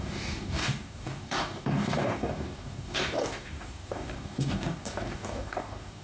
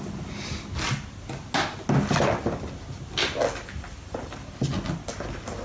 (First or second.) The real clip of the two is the second